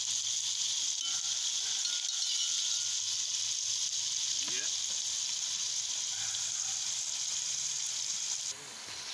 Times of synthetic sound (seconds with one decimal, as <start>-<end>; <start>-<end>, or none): 5.6-8.5